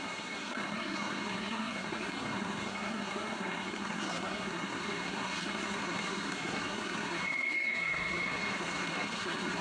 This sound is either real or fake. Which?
fake